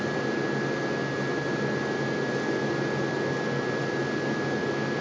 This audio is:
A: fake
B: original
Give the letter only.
B